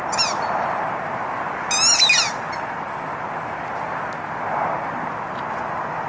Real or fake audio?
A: real